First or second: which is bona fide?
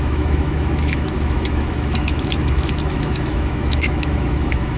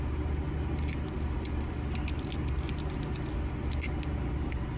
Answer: second